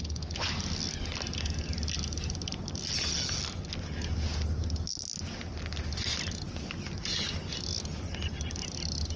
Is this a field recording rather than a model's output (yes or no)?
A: yes